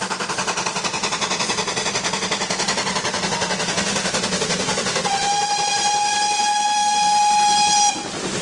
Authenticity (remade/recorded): recorded